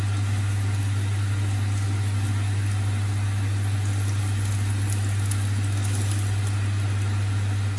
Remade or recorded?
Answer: recorded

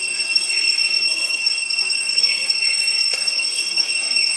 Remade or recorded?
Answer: remade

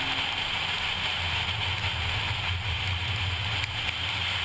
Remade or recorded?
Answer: recorded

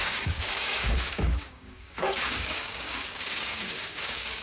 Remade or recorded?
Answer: remade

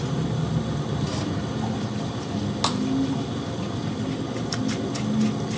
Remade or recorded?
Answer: recorded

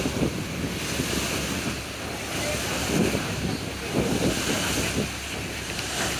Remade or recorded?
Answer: recorded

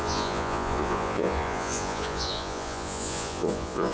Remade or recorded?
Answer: remade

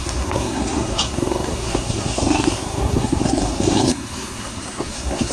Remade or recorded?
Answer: remade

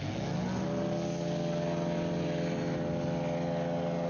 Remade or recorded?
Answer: recorded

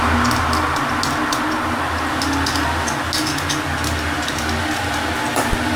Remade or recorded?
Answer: recorded